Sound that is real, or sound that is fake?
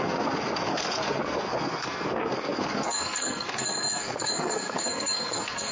fake